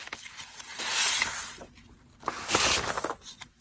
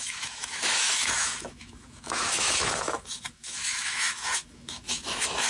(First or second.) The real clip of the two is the first